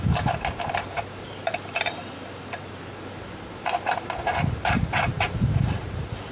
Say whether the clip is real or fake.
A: fake